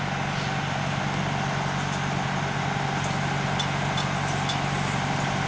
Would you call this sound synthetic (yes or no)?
no